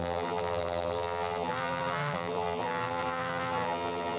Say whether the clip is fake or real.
fake